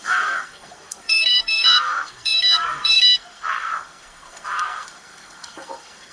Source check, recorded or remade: remade